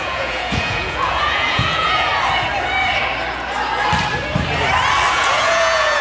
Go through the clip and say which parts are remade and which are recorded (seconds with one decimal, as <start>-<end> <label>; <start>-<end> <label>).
0.0-2.1 remade; 2.1-5.1 recorded; 5.1-6.0 remade